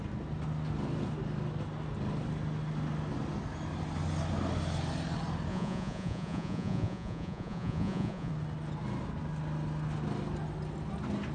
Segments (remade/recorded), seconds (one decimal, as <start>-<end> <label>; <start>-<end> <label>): 0.0-5.5 recorded; 5.5-8.3 remade; 8.3-11.3 recorded